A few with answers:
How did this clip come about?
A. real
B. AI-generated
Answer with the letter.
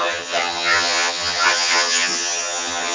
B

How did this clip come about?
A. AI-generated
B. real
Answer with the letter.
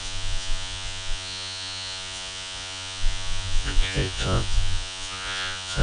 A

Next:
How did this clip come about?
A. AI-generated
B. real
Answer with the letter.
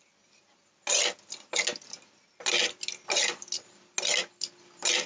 B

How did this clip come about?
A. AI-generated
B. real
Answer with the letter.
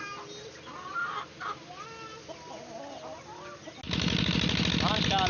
B